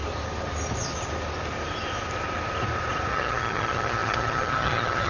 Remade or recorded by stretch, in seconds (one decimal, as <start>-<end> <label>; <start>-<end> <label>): 0.0-3.1 recorded; 3.1-5.1 remade